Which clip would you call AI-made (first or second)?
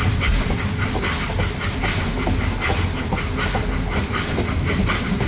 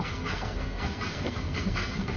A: second